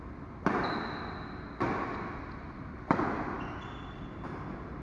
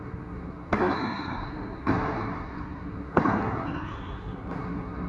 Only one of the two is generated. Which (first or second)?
second